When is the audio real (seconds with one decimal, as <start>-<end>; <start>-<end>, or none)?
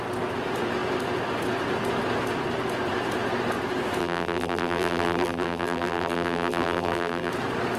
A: 0.0-4.0; 7.3-7.8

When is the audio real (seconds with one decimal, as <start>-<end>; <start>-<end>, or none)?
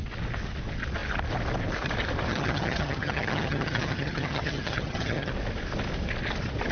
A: 0.0-2.3; 5.3-6.7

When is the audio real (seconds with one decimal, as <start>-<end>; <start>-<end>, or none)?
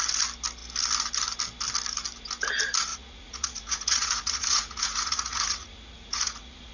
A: 0.0-2.9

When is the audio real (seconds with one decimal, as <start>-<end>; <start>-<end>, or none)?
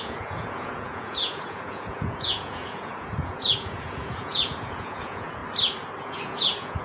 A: 5.4-6.0